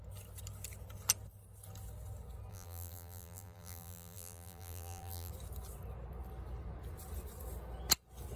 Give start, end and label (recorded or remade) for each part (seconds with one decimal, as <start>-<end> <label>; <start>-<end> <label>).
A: 0.0-2.5 recorded; 2.5-5.3 remade; 5.3-8.4 recorded